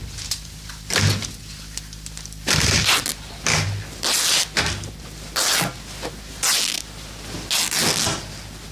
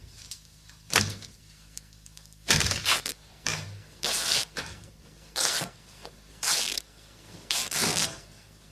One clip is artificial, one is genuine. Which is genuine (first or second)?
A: first